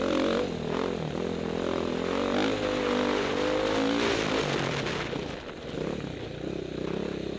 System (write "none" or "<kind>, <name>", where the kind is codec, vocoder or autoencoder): none